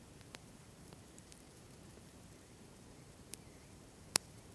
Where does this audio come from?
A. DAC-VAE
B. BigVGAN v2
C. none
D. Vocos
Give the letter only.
B